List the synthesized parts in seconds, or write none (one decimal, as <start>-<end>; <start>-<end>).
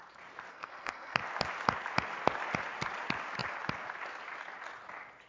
0.5-1.2